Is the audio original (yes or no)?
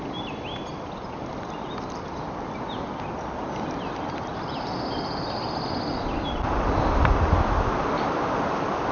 yes